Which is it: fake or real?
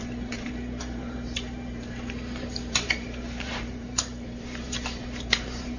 fake